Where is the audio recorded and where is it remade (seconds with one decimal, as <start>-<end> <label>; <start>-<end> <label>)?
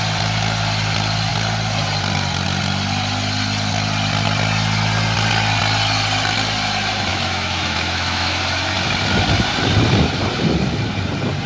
0.0-7.1 recorded; 7.1-8.4 remade; 8.4-11.5 recorded